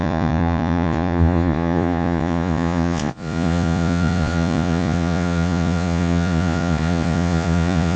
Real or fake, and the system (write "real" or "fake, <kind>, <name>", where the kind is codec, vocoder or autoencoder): fake, vocoder, Vocos